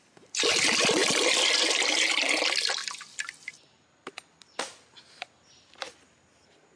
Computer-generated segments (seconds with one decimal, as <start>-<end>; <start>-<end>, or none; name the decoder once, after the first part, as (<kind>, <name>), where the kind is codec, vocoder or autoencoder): none